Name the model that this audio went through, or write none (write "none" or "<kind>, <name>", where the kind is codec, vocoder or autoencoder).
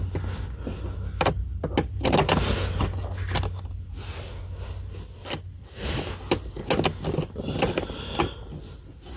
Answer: none